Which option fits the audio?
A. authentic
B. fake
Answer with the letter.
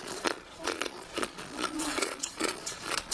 B